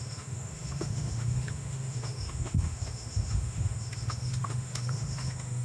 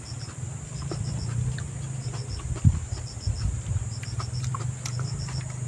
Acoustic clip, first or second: second